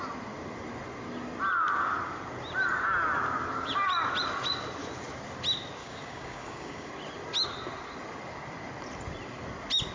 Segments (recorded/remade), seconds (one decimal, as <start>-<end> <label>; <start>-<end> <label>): 0.0-5.8 recorded; 5.8-6.9 remade; 6.9-9.9 recorded